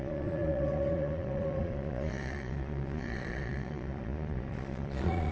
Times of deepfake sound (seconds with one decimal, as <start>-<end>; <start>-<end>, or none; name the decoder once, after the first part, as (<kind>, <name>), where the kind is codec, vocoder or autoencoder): 0.0-5.3 (vocoder, Vocos)